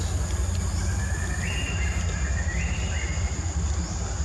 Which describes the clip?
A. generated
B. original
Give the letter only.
B